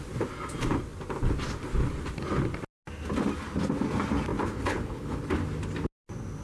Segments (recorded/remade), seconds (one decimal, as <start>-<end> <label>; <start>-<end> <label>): 0.0-4.4 recorded; 4.4-5.2 remade; 5.2-6.4 recorded